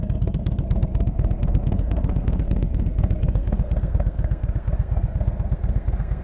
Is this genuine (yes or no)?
no